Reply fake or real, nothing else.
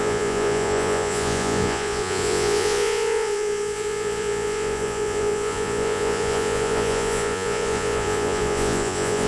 fake